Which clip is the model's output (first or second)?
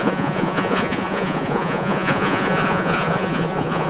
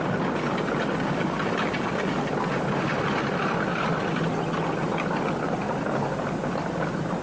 first